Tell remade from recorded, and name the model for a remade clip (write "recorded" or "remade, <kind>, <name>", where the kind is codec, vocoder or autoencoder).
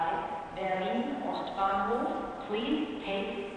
recorded